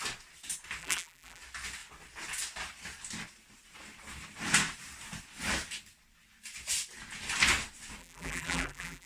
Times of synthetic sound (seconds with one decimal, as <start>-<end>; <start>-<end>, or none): 0.8-1.4; 8.0-9.1